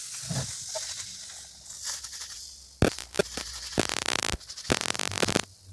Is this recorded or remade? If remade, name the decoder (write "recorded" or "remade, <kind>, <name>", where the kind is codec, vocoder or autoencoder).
recorded